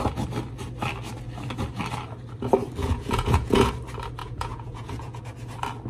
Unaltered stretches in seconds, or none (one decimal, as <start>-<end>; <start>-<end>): 0.0-2.8; 3.7-4.2; 5.2-5.9